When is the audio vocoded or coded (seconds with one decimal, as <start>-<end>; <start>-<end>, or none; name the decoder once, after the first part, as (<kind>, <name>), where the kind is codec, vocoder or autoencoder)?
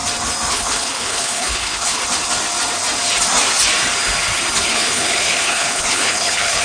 0.5-2.0 (codec, HILCodec); 4.7-6.6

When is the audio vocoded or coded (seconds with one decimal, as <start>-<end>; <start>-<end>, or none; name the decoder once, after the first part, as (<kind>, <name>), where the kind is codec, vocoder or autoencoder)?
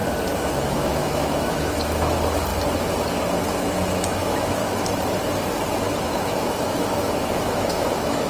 0.5-2.5 (autoencoder, DAC-VAE); 3.5-4.6; 5.7-8.3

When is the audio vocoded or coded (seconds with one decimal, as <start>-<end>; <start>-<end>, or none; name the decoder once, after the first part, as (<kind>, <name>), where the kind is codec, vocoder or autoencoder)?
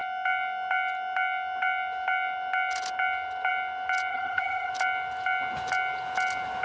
4.1-4.7 (vocoder, HiFi-GAN)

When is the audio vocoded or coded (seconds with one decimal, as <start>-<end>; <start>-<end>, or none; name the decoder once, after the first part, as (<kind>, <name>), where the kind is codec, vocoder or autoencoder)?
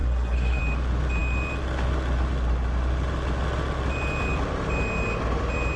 0.0-0.6 (codec, SNAC)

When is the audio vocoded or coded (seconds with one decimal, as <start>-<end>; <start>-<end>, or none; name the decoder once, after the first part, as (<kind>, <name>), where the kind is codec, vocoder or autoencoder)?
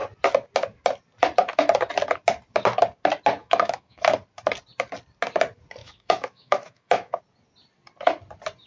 3.4-4.0 (autoencoder, DAC-VAE); 5.8-7.2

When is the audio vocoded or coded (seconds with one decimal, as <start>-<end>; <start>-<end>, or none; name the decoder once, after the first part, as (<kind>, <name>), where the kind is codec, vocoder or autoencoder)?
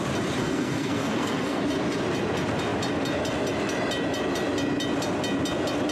0.4-1.6 (codec, SNAC)